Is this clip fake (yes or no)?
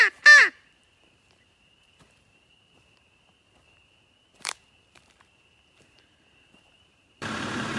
yes